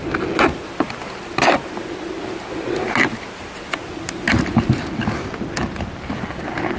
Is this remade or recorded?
recorded